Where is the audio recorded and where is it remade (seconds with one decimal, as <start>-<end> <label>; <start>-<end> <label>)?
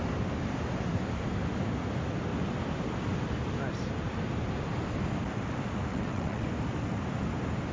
0.0-5.9 recorded; 5.9-6.5 remade; 6.5-7.7 recorded